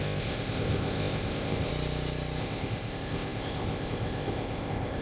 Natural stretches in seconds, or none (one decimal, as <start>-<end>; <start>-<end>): 1.7-2.4